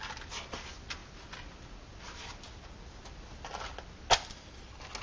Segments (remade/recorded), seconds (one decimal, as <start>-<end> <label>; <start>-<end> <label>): 0.0-5.0 recorded